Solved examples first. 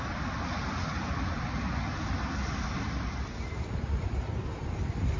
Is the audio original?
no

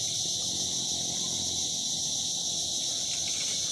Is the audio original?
yes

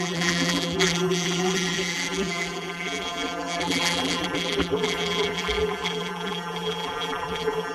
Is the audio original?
no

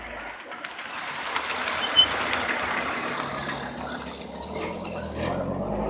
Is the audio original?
yes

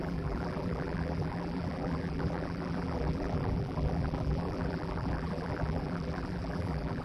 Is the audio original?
no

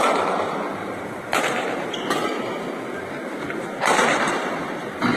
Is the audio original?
no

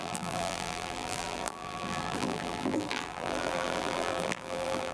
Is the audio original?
no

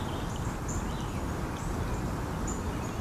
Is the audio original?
yes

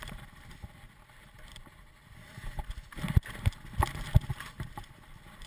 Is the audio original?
no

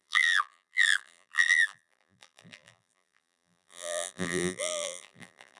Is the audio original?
no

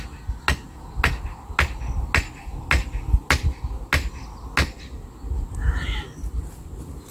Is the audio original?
yes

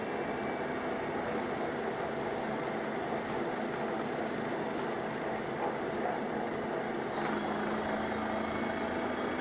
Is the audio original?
yes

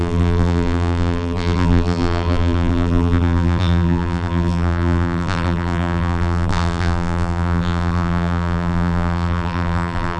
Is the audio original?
no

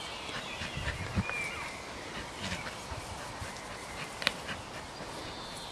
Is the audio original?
yes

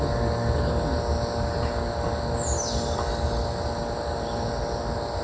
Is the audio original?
yes